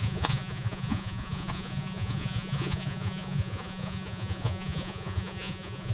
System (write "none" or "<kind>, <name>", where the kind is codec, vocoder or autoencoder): vocoder, Vocos